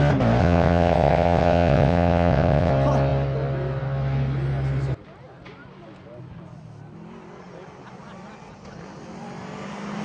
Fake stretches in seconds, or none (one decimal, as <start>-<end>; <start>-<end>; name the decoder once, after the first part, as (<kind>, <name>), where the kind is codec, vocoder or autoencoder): 0.4-2.7 (vocoder, WaveNeXt)

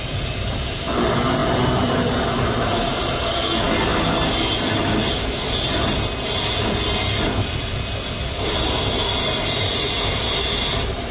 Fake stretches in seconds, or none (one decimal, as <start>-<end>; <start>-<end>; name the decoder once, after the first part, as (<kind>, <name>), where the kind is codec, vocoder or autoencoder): none